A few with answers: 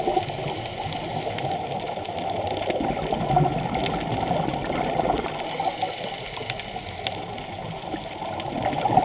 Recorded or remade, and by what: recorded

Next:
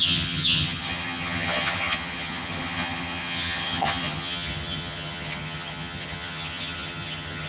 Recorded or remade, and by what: remade, vocoder, HiFi-GAN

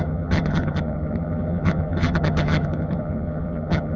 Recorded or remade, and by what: remade, vocoder, HiFi-GAN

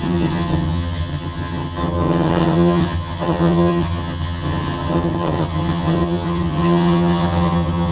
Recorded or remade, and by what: remade, vocoder, HiFi-GAN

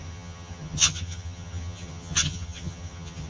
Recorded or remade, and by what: remade, vocoder, HiFi-GAN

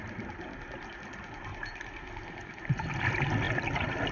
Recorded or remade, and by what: recorded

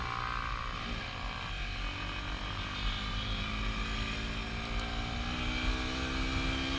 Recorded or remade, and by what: recorded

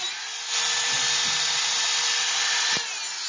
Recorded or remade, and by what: recorded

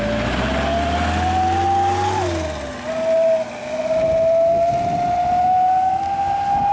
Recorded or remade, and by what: recorded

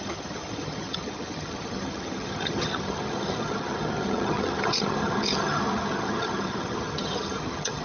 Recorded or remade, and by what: remade, vocoder, HiFi-GAN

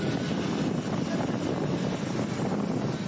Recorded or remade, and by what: recorded